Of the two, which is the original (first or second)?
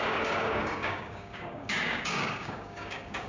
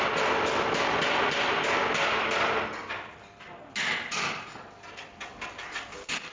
second